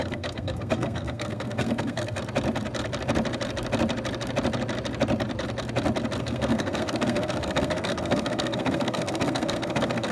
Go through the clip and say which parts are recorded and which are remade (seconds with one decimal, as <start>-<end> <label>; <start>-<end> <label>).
0.0-2.2 remade; 2.2-6.2 recorded; 6.2-10.1 remade